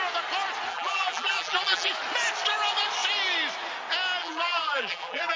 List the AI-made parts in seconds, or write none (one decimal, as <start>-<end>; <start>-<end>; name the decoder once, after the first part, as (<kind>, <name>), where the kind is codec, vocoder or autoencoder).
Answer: 0.7-1.9 (vocoder, BigVGAN v2); 4.2-5.4